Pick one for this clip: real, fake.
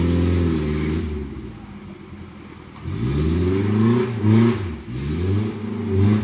real